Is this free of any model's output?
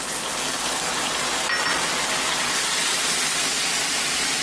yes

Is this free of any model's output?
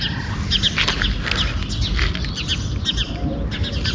yes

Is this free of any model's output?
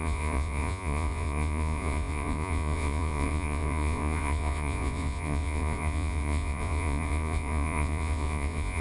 no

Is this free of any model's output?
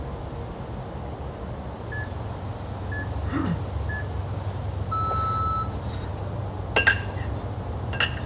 yes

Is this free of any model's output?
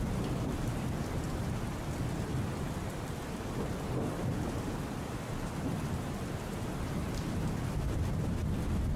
no